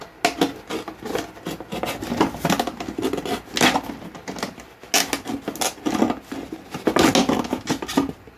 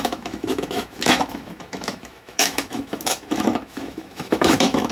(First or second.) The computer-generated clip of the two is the second